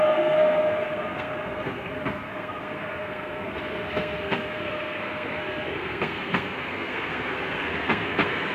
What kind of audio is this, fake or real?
fake